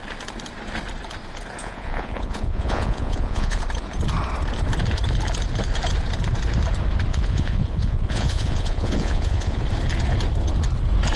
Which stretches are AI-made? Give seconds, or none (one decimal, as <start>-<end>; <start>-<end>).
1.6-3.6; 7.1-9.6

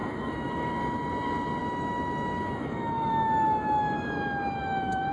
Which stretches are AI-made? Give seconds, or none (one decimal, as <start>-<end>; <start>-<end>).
0.0-0.7; 1.6-5.1

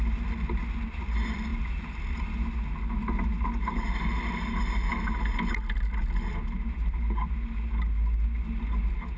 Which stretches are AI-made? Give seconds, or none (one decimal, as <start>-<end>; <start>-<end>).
none

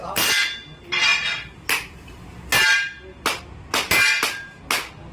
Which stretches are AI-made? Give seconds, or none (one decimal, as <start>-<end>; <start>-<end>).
none

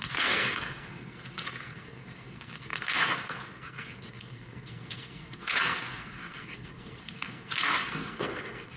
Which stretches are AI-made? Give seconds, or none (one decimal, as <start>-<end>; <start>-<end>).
0.0-8.8

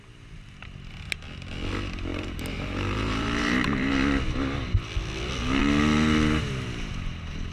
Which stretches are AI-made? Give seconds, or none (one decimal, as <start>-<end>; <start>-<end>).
2.1-3.9